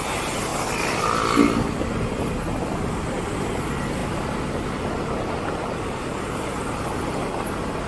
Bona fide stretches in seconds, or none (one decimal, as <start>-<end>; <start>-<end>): 0.0-7.9